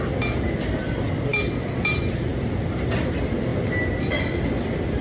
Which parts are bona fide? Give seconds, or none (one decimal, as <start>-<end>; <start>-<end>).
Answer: 0.0-5.0